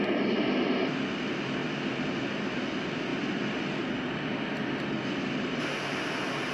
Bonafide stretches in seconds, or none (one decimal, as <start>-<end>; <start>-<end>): 0.0-6.5